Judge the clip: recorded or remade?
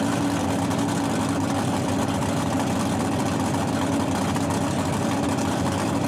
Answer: recorded